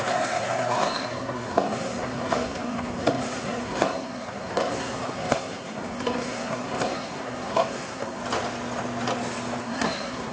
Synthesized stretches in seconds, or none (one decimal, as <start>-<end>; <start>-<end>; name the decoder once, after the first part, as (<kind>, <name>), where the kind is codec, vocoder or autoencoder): 0.0-8.2 (codec, SNAC); 9.6-10.3